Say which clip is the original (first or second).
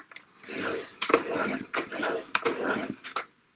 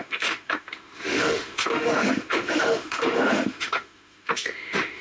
first